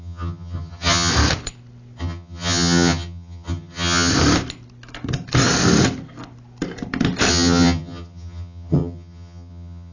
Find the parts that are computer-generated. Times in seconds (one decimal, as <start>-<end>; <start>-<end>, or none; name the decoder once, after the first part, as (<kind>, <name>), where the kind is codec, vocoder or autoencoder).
0.0-1.1 (vocoder, HiFi-GAN); 2.0-4.1; 7.3-9.9